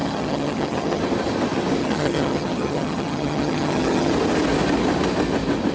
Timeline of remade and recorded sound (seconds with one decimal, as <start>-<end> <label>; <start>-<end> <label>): 0.0-1.0 remade; 1.0-1.8 recorded; 1.8-4.1 remade; 4.1-5.7 recorded